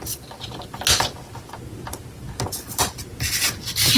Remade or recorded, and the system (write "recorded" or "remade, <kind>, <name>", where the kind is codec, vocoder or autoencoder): recorded